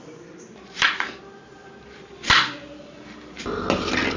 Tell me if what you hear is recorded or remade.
recorded